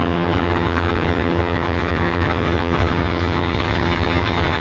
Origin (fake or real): fake